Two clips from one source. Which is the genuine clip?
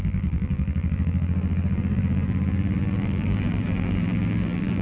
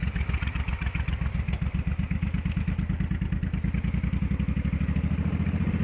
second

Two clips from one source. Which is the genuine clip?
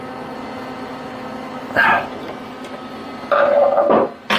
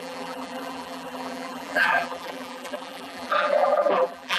first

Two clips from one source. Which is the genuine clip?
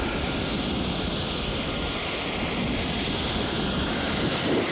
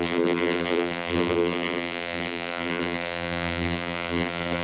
first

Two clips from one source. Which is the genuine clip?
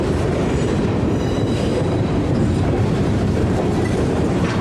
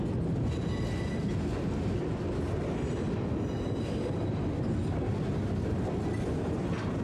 second